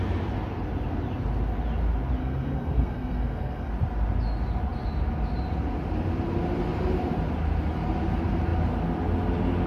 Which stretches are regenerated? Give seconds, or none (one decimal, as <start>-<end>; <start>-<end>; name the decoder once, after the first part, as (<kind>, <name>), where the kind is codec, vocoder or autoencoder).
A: 2.2-3.7 (codec, SNAC)